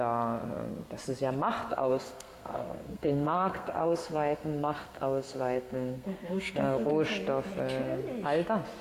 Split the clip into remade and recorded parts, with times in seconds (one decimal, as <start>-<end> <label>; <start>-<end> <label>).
0.0-1.7 recorded; 1.7-6.9 remade; 6.9-8.8 recorded